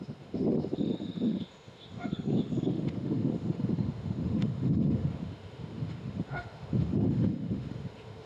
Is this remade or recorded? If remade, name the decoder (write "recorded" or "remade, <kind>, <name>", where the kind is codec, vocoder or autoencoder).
remade, autoencoder, DAC-VAE